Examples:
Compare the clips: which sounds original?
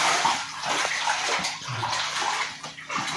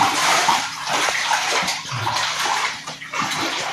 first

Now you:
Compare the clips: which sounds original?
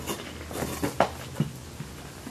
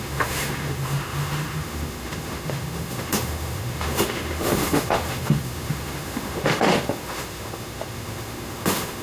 first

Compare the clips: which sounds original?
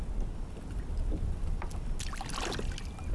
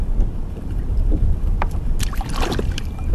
first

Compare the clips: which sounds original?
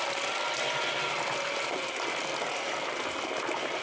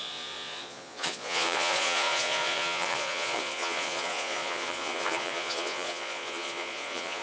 first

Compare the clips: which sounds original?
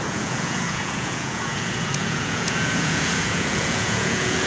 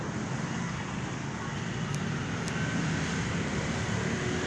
second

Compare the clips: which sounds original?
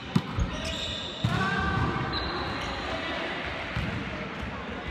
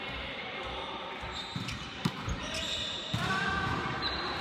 first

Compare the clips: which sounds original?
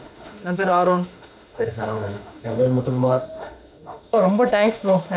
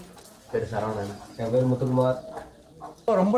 second